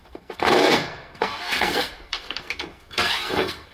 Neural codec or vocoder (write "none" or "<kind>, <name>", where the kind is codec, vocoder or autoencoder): codec, SNAC